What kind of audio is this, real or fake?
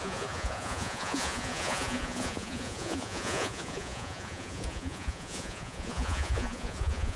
fake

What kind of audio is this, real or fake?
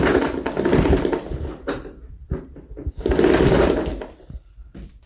fake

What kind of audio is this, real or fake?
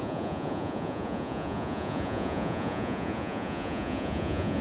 fake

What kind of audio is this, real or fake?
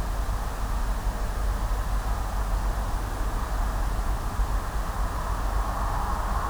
real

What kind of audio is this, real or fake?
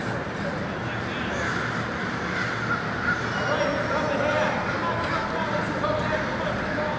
real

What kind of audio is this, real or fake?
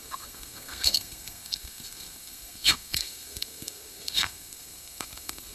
fake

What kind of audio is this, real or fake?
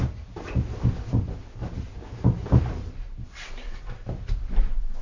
real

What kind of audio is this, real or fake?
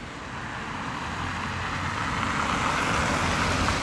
real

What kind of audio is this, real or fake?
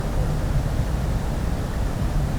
real